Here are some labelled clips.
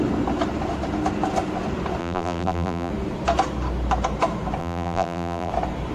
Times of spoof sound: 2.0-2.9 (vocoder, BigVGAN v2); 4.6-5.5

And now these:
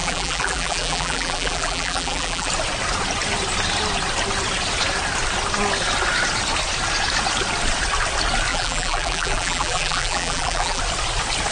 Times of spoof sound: 0.0-2.5 (vocoder, BigVGAN v2); 8.5-10.8

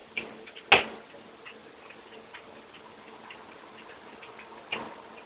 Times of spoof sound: none

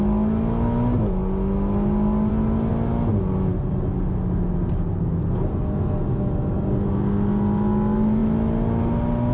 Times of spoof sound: none

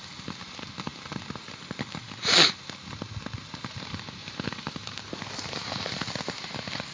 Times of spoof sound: 4.2-6.1 (vocoder, BigVGAN v2)

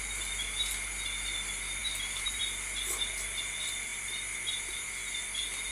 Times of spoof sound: 1.8-2.4 (vocoder, BigVGAN v2)